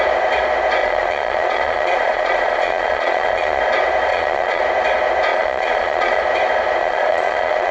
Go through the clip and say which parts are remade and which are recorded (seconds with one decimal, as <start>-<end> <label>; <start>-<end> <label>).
0.0-0.8 recorded; 0.8-3.6 remade; 3.6-4.1 recorded; 4.1-4.6 remade; 4.6-5.3 recorded; 5.3-6.2 remade; 6.2-6.8 recorded; 6.8-7.7 remade